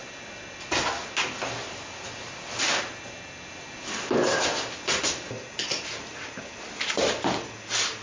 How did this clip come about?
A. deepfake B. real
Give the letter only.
B